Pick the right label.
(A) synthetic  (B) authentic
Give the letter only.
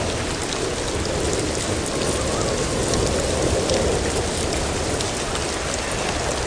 B